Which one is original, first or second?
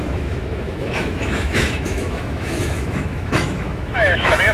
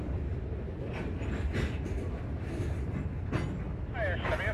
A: second